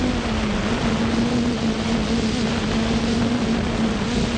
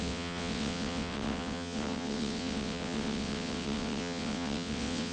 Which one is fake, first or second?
second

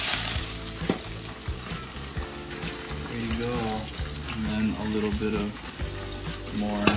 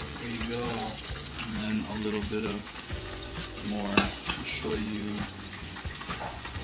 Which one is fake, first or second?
second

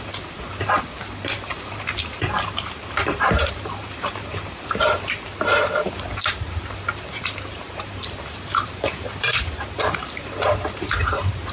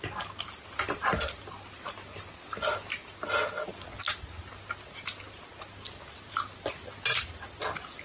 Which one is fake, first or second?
first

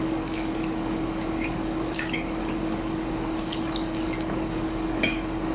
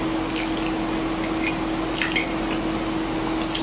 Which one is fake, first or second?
first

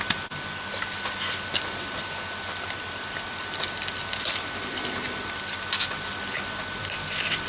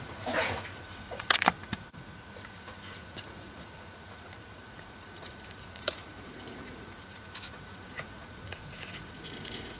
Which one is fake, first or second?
second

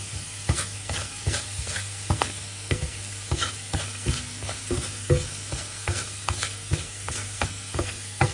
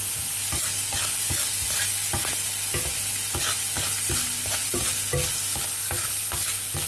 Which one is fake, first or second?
first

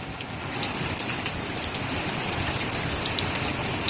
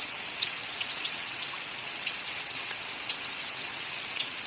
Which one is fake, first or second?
second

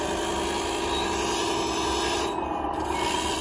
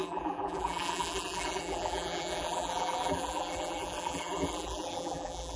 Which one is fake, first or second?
second